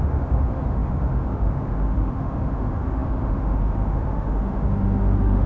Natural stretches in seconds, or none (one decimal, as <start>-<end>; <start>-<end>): none

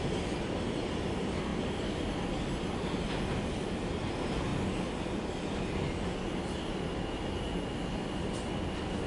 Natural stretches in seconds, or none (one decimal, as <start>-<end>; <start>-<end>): 0.0-9.1

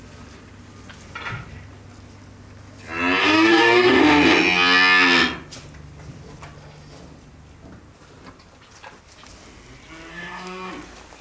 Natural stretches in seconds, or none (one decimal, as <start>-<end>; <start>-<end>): 0.0-3.2; 4.0-10.1; 10.7-11.2

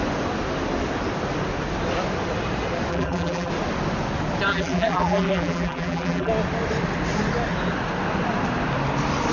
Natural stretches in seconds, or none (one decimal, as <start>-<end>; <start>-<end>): 0.0-2.9; 3.5-4.5; 6.3-9.3

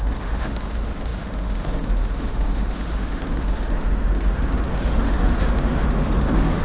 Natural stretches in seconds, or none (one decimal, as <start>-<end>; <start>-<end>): none

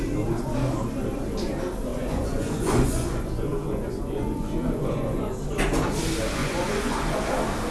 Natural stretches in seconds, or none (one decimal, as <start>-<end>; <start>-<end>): 0.0-1.9; 5.3-6.4; 7.2-7.7

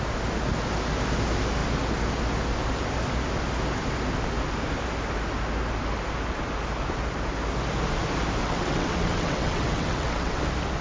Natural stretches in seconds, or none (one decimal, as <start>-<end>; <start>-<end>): 0.0-8.4; 10.4-10.8

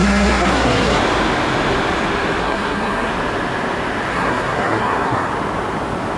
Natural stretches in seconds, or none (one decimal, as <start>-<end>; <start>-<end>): 1.0-2.4; 3.1-4.1; 5.3-6.2